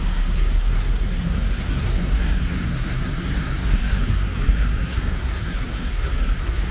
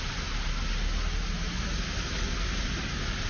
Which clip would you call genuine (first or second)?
second